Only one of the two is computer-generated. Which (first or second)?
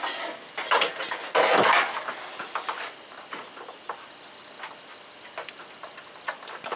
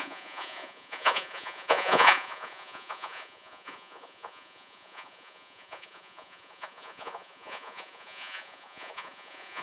second